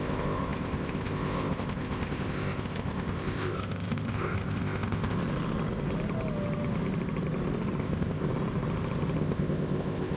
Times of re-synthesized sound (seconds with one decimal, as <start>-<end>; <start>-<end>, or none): 0.0-5.2; 7.8-8.2; 9.2-10.2